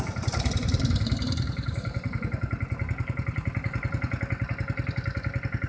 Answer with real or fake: real